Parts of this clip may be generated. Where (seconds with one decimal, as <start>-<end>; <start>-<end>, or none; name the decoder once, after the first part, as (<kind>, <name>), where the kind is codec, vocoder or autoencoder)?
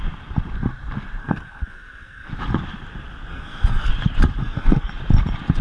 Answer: 1.2-2.3 (codec, SNAC); 3.3-3.9; 4.4-4.9